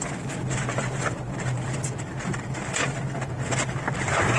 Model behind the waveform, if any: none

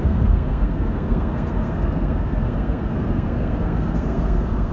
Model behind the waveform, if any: codec, SNAC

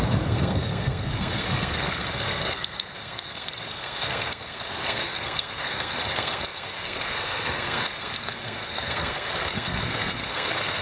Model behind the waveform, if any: codec, SNAC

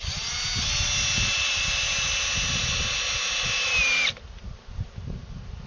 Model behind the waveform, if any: none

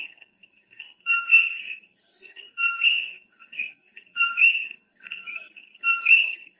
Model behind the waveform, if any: codec, SNAC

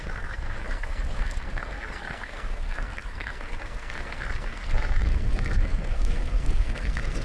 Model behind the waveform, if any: codec, SNAC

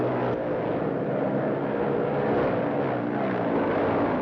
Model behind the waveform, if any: none